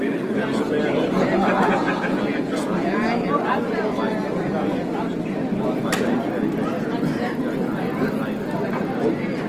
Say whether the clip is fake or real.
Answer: real